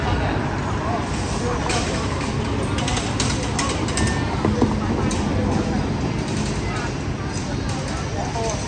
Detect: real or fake real